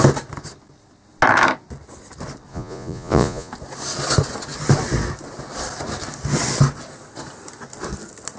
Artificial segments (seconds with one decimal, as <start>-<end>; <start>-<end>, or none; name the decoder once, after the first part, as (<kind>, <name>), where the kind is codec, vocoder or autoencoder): 2.5-3.5 (vocoder, Vocos)